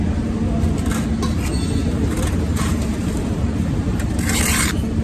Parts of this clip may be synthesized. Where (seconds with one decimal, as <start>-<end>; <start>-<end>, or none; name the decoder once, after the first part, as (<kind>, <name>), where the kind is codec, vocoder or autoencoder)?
1.8-4.4 (vocoder, BigVGAN v2)